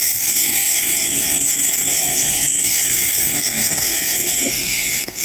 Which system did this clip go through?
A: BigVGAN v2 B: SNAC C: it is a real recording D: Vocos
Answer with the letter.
B